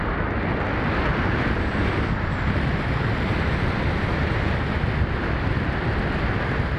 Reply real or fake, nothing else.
real